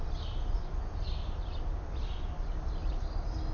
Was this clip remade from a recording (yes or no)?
no